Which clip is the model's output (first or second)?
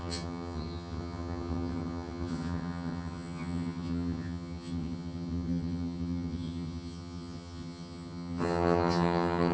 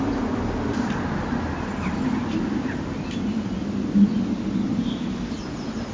first